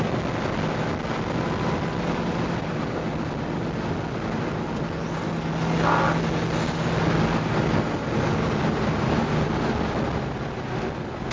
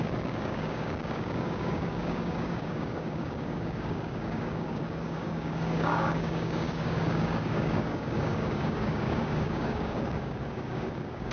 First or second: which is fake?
second